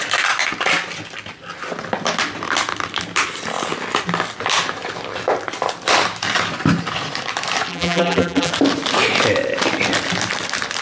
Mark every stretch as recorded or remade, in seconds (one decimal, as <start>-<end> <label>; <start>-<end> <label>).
0.0-7.7 recorded; 7.7-8.5 remade; 8.5-10.8 recorded